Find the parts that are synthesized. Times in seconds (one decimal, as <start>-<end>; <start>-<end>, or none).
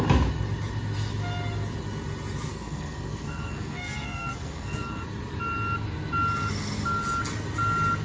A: 2.5-5.0